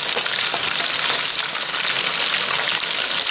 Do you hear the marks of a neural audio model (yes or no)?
no